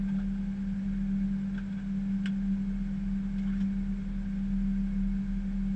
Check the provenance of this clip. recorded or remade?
recorded